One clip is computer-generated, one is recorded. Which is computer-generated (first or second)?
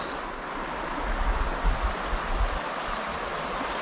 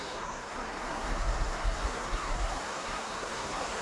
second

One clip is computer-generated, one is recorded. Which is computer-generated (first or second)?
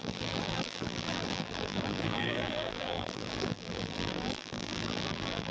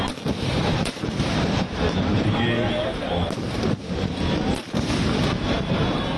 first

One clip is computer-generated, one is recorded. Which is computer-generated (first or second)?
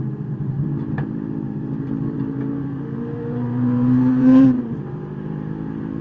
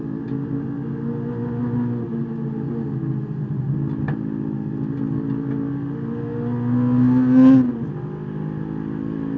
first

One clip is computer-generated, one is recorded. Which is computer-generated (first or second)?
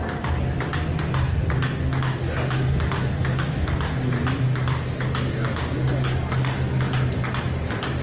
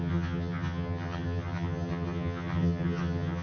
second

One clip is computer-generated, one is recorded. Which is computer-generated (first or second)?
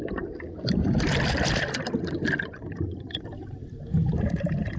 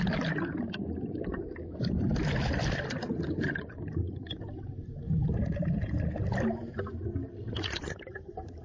first